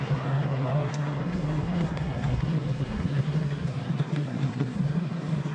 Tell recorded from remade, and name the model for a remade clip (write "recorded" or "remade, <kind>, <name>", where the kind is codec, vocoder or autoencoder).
remade, codec, SNAC